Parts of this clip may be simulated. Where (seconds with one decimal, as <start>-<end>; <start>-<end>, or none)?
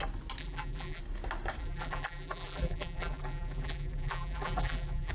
0.4-1.0; 1.6-5.1